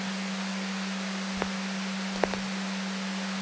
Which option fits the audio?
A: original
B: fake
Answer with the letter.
A